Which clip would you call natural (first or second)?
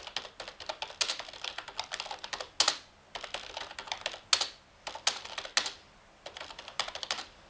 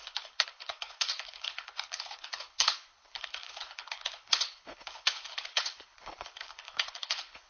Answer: first